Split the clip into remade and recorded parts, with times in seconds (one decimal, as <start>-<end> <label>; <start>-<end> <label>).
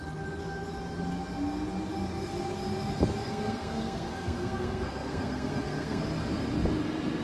0.0-3.2 recorded; 3.2-6.0 remade; 6.0-7.2 recorded